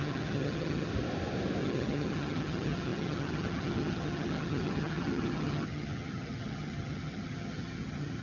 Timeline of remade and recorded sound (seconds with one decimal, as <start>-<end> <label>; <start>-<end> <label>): 0.0-0.9 remade; 0.9-1.6 recorded; 1.6-8.2 remade